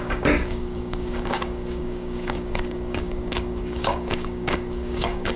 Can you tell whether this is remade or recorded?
remade